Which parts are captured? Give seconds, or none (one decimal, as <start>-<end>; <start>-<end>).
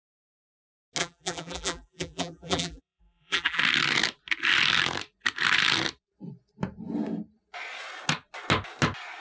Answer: 0.0-1.0; 3.6-9.2